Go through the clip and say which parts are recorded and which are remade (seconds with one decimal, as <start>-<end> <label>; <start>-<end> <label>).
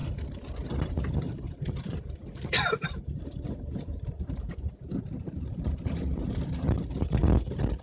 0.0-3.9 remade; 3.9-5.2 recorded; 5.2-7.8 remade